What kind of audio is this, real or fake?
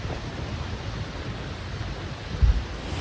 real